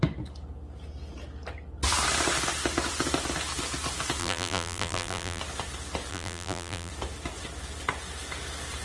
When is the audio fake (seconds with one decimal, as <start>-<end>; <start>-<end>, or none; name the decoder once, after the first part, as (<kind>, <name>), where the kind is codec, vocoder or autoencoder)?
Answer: 4.2-5.4 (vocoder, BigVGAN v2); 6.1-6.9

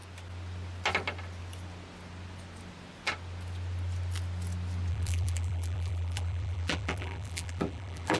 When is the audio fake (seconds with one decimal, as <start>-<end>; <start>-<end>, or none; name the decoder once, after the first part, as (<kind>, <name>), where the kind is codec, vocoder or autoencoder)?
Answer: 4.9-8.2 (vocoder, BigVGAN v2)

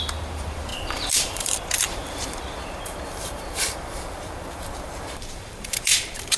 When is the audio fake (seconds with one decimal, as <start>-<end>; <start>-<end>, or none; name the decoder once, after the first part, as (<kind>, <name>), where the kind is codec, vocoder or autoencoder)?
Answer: 0.0-6.4 (vocoder, BigVGAN v2)

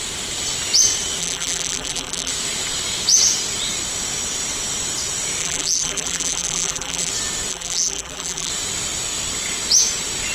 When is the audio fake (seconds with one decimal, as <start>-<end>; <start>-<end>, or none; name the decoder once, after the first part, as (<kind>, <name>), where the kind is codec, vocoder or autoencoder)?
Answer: 1.2-2.3 (vocoder, BigVGAN v2); 5.4-7.1; 7.5-8.5

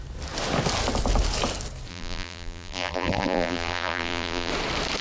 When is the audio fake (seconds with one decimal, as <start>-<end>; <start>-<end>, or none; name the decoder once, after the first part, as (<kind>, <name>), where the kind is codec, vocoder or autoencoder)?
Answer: 1.9-4.5 (vocoder, BigVGAN v2)

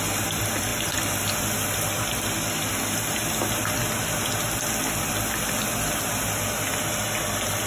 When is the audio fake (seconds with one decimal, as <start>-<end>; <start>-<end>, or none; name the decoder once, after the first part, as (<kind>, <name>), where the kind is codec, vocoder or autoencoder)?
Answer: none

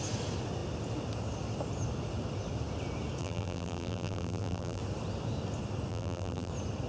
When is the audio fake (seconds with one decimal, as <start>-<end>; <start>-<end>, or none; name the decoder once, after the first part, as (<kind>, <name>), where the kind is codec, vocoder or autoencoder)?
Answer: 3.2-4.8 (vocoder, BigVGAN v2); 5.9-6.5